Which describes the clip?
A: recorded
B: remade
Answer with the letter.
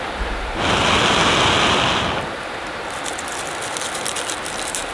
A